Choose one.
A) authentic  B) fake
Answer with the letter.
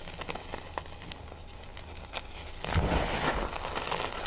A